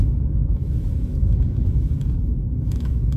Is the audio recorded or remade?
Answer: remade